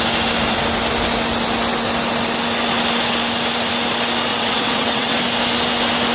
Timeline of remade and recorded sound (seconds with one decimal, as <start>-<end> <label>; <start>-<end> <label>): 0.0-4.3 recorded; 4.3-5.2 remade; 5.2-6.1 recorded